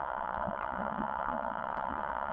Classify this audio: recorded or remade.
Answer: remade